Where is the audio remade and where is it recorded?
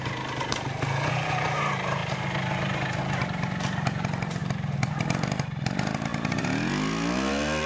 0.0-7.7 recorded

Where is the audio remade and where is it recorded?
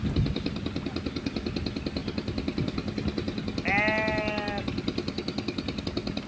0.0-6.3 recorded